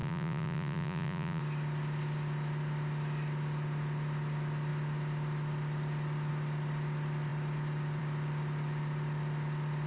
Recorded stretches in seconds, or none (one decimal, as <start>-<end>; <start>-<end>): 1.4-9.9